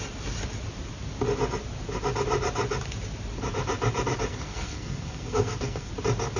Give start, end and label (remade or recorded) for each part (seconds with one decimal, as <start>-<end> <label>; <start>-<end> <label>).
0.0-4.3 recorded; 4.3-5.9 remade; 5.9-6.4 recorded